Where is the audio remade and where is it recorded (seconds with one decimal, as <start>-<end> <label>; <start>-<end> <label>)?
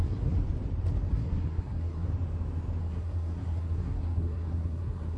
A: 0.0-0.4 remade; 0.4-1.1 recorded; 1.1-2.1 remade; 2.1-2.8 recorded; 2.8-5.2 remade